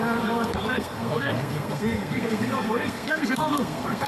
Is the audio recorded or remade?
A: remade